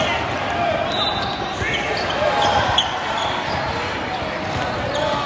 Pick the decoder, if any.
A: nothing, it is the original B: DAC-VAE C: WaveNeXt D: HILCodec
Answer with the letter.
A